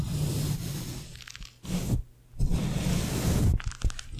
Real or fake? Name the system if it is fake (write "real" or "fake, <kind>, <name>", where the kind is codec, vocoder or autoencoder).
real